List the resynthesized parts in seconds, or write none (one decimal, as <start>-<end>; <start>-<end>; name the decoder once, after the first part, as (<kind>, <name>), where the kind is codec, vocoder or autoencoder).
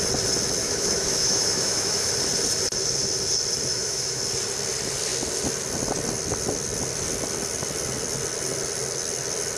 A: 0.6-2.1 (autoencoder, DAC-VAE); 3.7-4.2